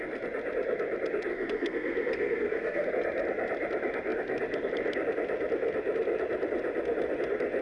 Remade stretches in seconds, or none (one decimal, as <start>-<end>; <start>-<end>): 1.3-2.9